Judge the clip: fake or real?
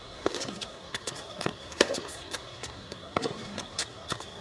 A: fake